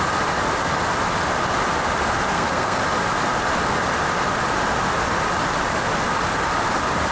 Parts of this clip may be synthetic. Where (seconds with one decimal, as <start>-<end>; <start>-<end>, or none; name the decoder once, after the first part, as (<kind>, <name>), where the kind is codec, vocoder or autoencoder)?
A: 2.3-2.8 (codec, SNAC)